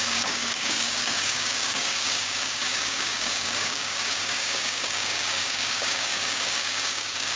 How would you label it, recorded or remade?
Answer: remade